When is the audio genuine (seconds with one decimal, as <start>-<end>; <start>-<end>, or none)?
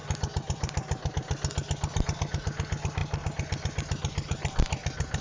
0.0-5.2